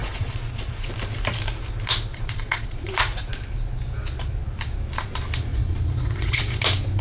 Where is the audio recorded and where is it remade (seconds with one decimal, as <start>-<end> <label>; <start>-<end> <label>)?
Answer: 0.0-0.9 remade; 0.9-2.1 recorded; 2.1-3.3 remade; 3.3-5.5 recorded; 5.5-6.6 remade; 6.6-7.0 recorded